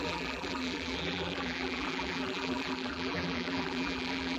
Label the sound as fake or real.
fake